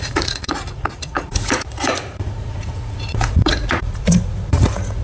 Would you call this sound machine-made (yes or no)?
yes